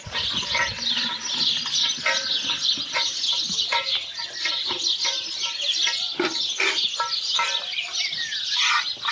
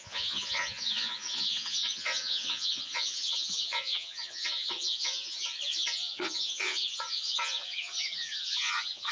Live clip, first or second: first